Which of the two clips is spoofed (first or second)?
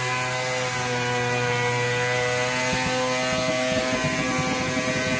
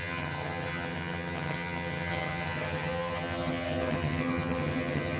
second